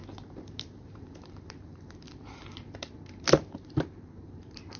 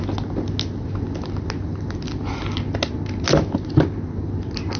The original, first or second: second